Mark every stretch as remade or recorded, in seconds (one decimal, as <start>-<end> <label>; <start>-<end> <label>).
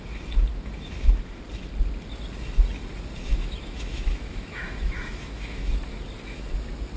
0.0-0.5 recorded; 0.5-1.4 remade; 1.4-3.3 recorded; 3.3-5.8 remade; 5.8-7.0 recorded